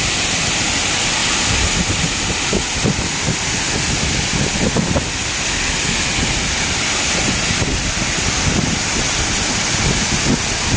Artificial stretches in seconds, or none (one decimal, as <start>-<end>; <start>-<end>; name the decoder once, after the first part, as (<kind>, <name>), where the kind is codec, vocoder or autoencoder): none